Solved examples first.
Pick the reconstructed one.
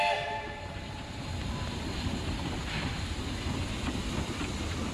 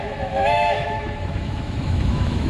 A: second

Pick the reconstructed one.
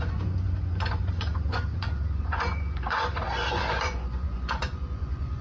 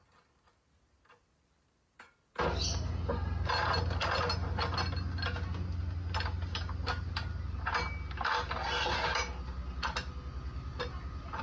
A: first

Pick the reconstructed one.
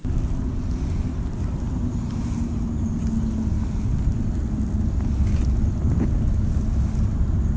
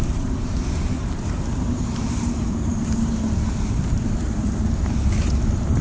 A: second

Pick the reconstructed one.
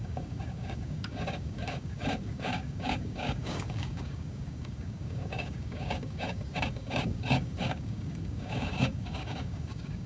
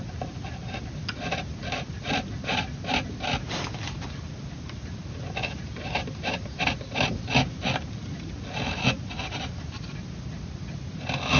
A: first